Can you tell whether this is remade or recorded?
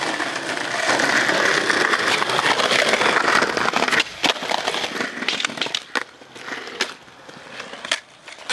recorded